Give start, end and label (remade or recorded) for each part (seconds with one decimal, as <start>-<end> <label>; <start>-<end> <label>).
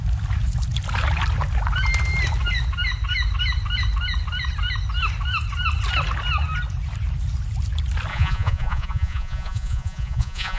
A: 0.0-8.1 recorded; 8.1-10.6 remade